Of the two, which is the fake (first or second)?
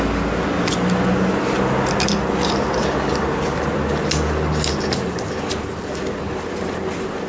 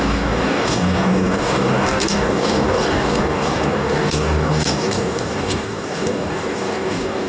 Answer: second